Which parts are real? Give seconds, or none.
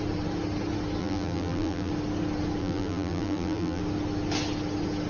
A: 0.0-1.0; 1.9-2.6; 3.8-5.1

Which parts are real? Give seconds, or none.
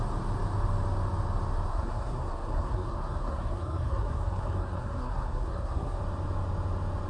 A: 0.0-1.7; 6.0-7.1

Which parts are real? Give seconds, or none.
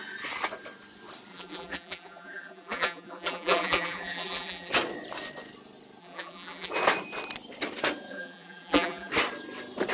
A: 0.0-1.3; 4.7-6.0; 6.7-8.1; 9.1-9.9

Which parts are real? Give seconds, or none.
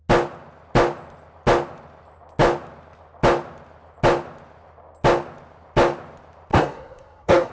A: 0.0-6.5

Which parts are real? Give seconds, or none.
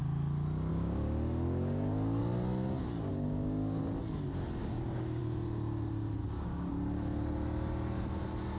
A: 0.0-0.7; 2.2-3.1; 3.8-4.6; 5.2-6.2; 6.7-8.6